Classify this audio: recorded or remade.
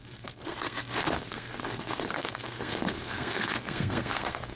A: remade